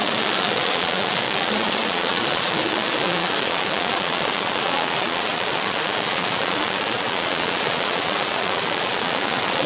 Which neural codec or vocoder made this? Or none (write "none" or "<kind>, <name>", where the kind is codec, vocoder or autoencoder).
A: vocoder, Vocos